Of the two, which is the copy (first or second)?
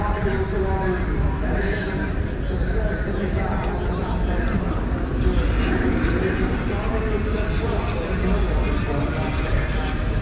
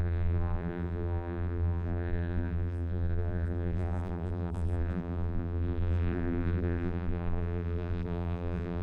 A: second